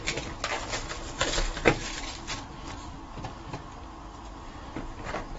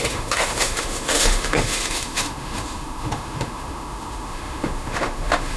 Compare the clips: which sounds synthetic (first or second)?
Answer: second